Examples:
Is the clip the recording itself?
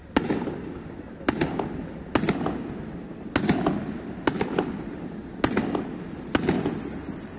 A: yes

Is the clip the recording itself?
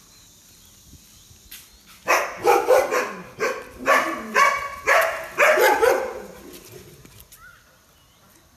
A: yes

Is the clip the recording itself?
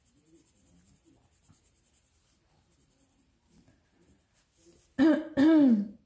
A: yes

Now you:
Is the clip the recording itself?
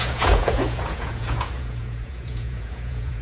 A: no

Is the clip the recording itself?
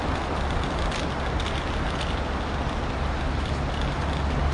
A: yes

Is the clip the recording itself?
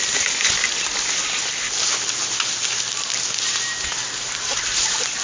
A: yes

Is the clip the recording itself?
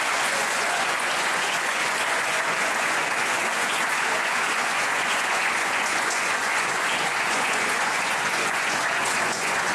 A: no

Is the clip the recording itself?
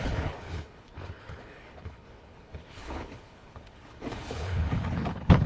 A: no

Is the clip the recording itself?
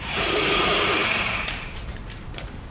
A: no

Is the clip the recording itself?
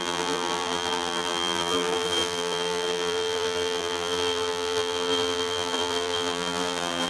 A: no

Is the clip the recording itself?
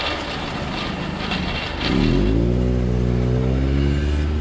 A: yes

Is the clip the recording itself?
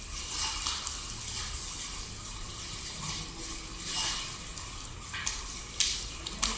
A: yes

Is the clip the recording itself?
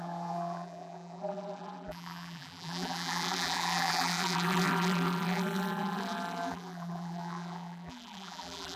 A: no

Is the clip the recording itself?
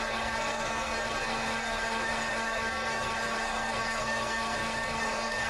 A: no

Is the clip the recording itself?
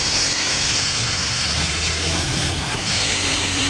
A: no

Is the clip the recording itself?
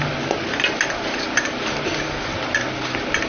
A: yes